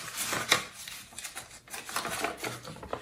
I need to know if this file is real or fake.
real